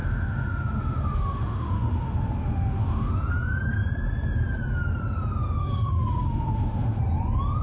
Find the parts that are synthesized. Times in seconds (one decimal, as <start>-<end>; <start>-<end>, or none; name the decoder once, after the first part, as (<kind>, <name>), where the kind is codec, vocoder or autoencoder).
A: 0.0-3.1 (autoencoder, DAC-VAE); 5.6-7.0